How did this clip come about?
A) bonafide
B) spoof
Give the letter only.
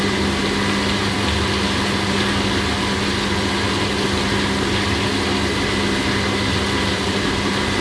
A